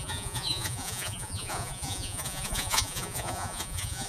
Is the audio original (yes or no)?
no